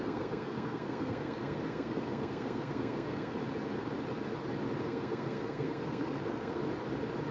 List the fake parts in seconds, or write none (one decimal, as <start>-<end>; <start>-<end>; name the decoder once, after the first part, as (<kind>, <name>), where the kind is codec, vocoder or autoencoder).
0.0-3.4 (codec, SNAC); 4.8-6.6